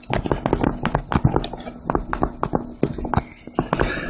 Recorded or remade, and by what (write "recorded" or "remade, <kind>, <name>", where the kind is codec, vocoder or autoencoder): recorded